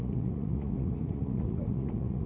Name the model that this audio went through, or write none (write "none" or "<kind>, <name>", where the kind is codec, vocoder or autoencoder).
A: vocoder, Vocos